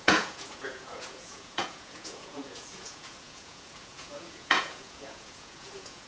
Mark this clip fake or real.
fake